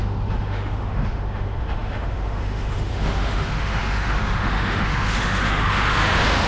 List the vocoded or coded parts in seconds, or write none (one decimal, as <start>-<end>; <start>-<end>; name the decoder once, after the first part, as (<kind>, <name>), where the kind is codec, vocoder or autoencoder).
0.0-6.5 (autoencoder, DAC-VAE)